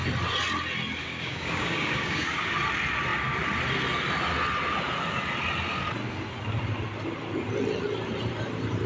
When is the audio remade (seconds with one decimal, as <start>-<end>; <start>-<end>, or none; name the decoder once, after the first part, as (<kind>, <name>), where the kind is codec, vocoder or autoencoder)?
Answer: 1.0-2.5 (codec, DAC)